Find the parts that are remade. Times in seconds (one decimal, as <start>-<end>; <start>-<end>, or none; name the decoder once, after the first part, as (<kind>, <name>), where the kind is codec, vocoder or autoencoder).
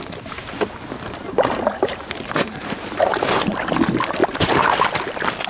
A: 1.7-3.6 (vocoder, BigVGAN v2); 4.2-5.0